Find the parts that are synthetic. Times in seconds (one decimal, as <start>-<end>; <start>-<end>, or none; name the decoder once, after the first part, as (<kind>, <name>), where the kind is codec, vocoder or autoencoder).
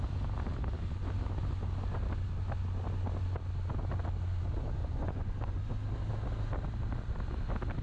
4.8-5.6 (vocoder, Vocos)